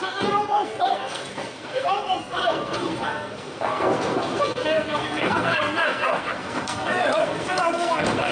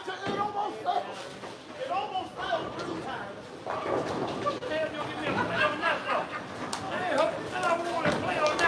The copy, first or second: first